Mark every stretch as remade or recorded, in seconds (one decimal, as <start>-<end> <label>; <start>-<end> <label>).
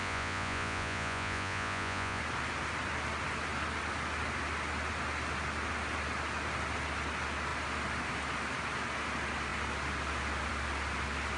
0.0-2.2 remade; 2.2-11.4 recorded